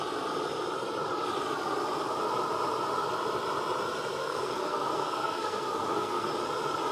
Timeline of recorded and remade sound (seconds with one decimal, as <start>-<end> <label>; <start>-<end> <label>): 0.0-4.2 recorded; 4.2-6.3 remade; 6.3-6.9 recorded